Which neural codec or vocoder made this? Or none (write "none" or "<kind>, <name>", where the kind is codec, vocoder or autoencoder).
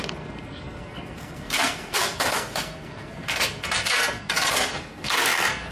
codec, SNAC